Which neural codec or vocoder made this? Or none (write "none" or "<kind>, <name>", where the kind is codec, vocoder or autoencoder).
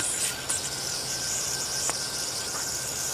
none